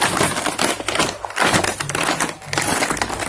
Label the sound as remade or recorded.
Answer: recorded